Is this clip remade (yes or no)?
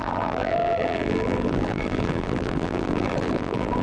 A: yes